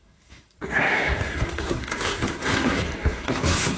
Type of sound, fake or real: fake